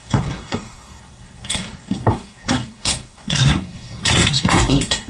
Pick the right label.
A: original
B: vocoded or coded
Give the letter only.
B